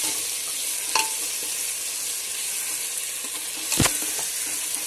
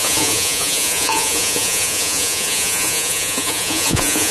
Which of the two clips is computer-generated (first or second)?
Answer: second